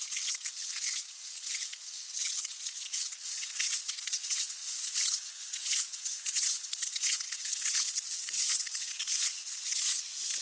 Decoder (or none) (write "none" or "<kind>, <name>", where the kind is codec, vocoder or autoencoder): vocoder, WaveNeXt